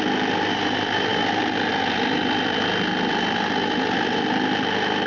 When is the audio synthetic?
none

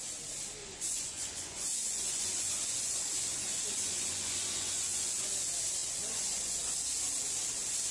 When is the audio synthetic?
0.6-5.3 (vocoder, Vocos); 5.8-6.7

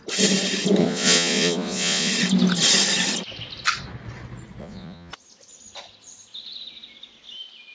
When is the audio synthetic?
0.8-2.1 (vocoder, Vocos); 4.6-5.1

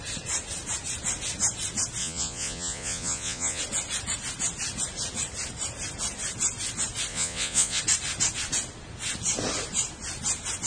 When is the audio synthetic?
2.0-3.6 (vocoder, Vocos); 7.1-7.8